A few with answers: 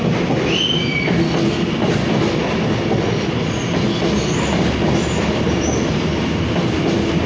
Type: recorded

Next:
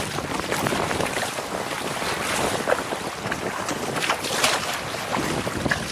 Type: recorded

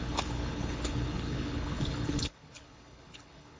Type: remade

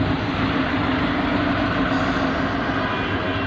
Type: recorded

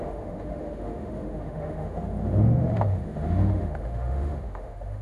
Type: remade